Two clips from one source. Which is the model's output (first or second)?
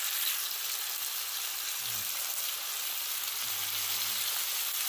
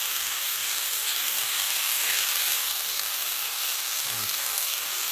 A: second